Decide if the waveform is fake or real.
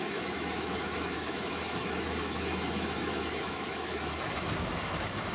fake